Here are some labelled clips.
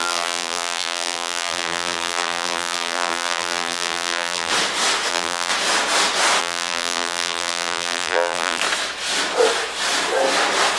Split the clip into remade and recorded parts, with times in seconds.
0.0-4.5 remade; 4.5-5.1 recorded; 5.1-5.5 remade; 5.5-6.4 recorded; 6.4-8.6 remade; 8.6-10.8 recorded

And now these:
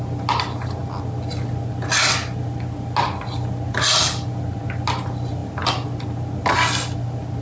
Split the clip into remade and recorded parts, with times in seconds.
0.0-7.4 recorded

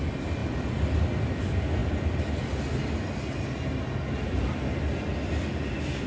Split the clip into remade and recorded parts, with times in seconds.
0.0-0.4 recorded; 0.4-1.0 remade; 1.0-1.8 recorded; 1.8-2.6 remade; 2.6-6.1 recorded

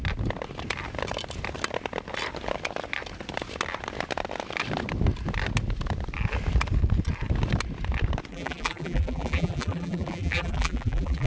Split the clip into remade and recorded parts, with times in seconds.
0.0-8.3 recorded; 8.3-11.3 remade

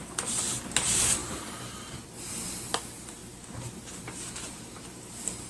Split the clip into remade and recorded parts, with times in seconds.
0.0-5.5 remade